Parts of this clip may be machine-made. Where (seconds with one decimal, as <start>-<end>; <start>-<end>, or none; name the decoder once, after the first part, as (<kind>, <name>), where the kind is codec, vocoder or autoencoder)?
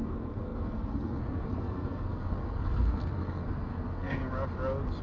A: 0.0-4.2 (codec, SNAC)